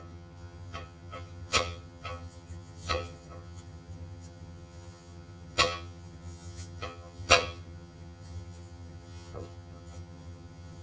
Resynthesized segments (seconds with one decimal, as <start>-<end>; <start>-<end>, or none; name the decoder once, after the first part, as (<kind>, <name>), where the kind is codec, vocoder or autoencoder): 0.0-10.8 (vocoder, HiFi-GAN)